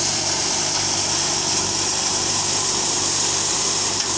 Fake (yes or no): yes